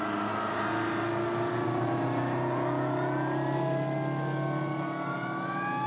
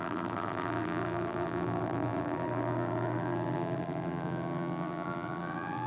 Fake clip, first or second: second